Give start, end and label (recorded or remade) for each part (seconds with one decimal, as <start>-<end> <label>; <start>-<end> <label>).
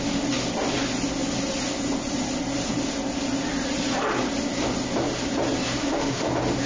0.0-5.8 recorded; 5.8-6.3 remade; 6.3-6.7 recorded